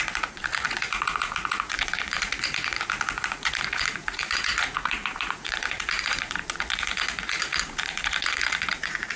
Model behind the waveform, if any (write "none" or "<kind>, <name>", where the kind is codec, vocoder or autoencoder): vocoder, Vocos